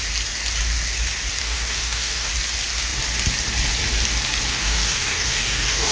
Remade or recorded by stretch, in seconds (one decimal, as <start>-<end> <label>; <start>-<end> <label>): 0.0-1.4 recorded; 1.4-2.3 remade; 2.3-4.5 recorded; 4.5-5.9 remade